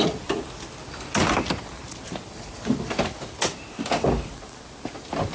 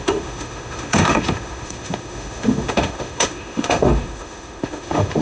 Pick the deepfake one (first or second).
second